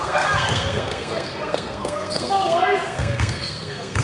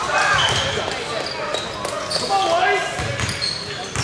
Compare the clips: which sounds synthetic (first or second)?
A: first